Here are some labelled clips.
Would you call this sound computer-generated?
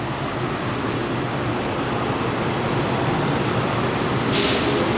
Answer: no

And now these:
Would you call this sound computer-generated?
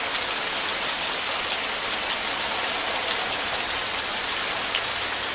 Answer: no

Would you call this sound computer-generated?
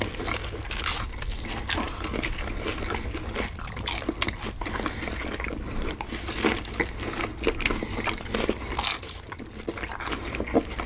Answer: no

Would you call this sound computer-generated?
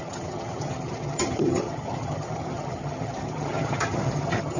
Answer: yes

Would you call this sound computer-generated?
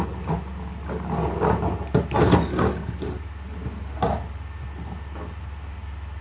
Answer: no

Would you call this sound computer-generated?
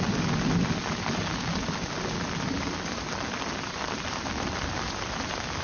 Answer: no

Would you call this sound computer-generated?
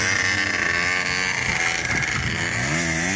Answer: no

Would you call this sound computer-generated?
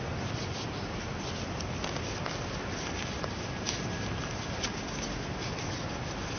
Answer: no